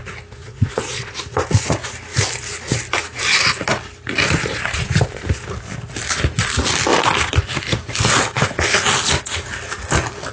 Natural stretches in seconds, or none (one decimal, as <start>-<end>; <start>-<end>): 0.0-0.4; 1.2-10.3